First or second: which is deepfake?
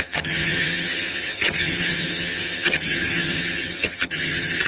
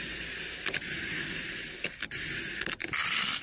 first